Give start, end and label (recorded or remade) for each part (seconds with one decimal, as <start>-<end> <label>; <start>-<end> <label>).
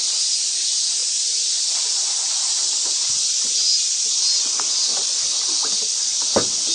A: 0.0-6.7 recorded